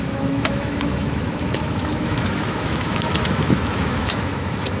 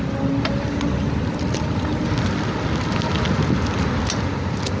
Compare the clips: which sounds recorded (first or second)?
second